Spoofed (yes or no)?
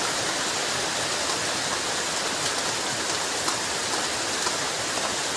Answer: no